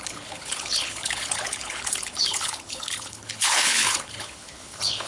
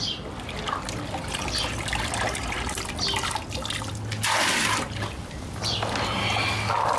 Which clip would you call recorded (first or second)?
second